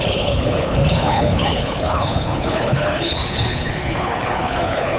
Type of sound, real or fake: fake